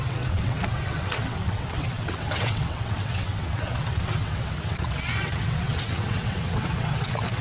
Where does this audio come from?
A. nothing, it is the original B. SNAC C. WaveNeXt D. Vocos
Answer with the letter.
C